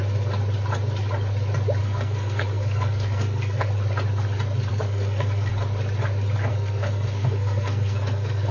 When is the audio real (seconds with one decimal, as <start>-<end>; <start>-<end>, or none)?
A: 0.0-1.8; 3.7-4.7; 5.5-6.5